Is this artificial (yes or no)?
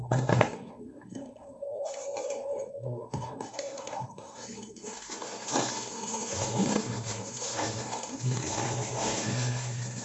yes